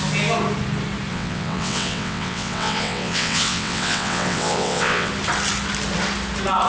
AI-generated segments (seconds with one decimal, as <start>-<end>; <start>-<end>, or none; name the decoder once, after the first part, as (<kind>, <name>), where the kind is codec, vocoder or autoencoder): 1.1-5.1 (vocoder, WaveNeXt)